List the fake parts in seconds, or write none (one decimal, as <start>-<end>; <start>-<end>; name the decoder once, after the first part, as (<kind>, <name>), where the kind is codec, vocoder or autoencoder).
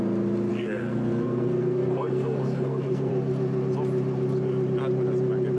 0.5-3.1 (codec, SNAC)